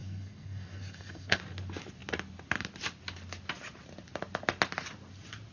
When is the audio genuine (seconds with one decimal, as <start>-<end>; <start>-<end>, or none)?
1.4-5.5